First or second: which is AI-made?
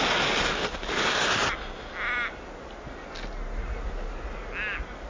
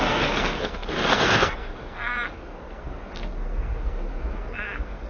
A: second